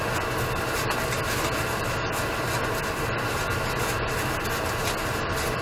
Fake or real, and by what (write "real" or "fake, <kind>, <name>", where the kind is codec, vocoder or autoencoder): real